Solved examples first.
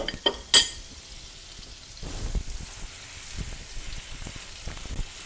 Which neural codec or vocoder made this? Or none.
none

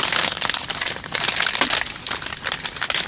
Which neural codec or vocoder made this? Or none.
none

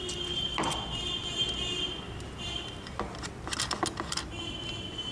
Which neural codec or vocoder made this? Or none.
none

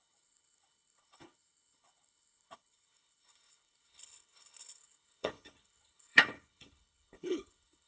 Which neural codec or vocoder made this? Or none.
codec, HILCodec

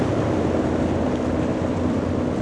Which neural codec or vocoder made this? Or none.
none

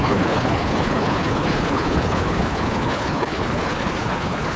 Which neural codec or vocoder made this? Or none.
codec, HILCodec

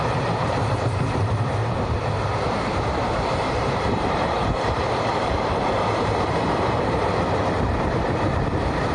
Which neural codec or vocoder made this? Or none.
vocoder, BigVGAN v2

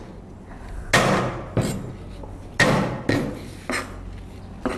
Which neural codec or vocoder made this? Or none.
none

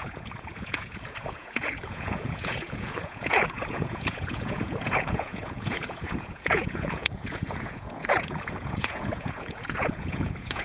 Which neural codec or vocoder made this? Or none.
vocoder, Vocos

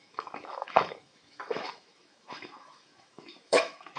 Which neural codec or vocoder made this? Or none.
autoencoder, DAC-VAE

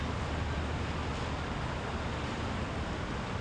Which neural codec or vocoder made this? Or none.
none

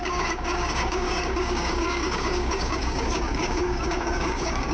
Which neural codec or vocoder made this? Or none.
codec, DAC